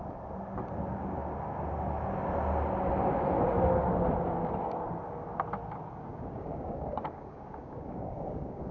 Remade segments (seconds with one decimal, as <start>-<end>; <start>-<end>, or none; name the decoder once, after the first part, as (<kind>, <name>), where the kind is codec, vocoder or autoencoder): 6.1-8.7 (codec, DAC)